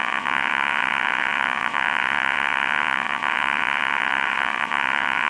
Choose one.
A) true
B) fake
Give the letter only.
B